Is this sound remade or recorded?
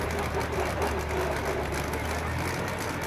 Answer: recorded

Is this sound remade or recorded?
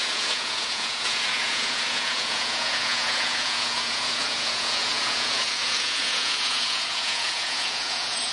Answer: remade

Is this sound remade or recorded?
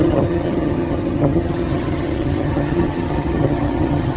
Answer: remade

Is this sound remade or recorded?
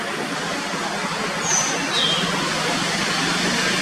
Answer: recorded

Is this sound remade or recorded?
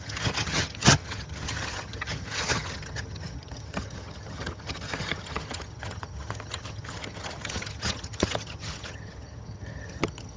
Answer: remade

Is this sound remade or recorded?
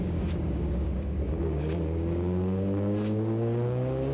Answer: remade